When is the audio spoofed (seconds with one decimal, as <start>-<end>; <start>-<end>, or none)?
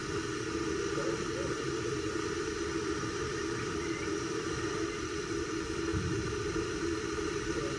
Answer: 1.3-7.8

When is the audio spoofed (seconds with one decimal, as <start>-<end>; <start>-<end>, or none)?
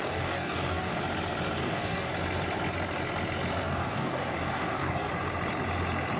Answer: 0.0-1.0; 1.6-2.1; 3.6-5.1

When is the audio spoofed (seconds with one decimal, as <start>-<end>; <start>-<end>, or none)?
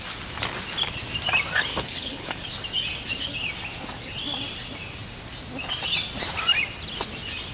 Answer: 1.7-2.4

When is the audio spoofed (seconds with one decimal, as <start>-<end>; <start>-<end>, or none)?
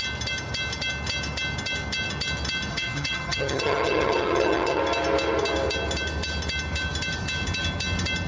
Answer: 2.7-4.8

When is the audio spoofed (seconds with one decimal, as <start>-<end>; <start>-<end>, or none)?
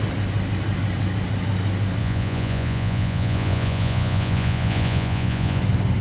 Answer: 2.0-5.6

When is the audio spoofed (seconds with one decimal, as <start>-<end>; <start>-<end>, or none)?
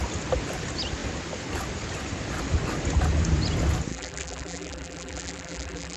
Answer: 3.9-6.0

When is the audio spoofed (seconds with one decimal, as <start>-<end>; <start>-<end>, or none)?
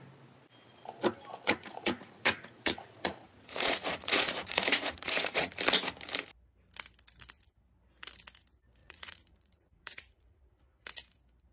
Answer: 1.3-5.5; 8.8-10.4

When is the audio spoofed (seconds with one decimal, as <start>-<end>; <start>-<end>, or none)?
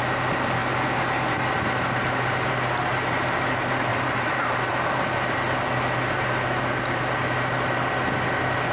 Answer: 3.9-5.4